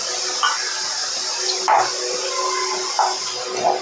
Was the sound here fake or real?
real